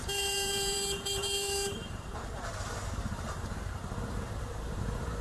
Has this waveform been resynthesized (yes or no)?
yes